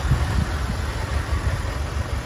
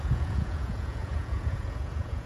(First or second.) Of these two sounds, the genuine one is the first